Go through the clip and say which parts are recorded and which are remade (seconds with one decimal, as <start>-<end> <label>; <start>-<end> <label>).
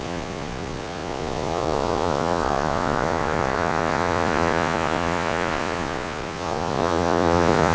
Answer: 0.0-7.7 remade